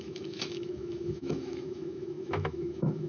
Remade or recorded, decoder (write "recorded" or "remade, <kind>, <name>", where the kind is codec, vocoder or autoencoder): remade, autoencoder, DAC-VAE